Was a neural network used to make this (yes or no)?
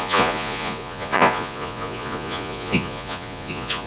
yes